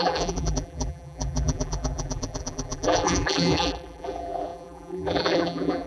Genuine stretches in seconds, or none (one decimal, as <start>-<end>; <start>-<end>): none